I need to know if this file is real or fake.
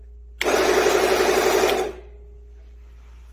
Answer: real